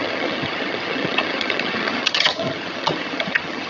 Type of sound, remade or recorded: remade